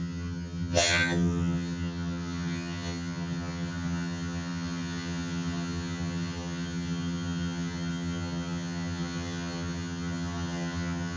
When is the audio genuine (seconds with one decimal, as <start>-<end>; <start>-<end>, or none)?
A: none